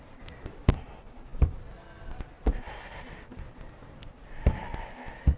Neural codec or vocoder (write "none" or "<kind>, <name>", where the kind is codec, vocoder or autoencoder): none